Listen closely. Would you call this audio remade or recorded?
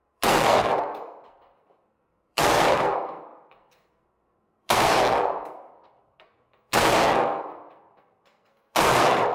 remade